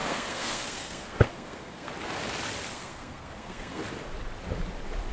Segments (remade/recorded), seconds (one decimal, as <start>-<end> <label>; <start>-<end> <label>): 0.0-1.9 remade; 1.9-2.7 recorded; 2.7-3.8 remade; 3.8-5.1 recorded